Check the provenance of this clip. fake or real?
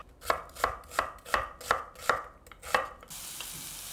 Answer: real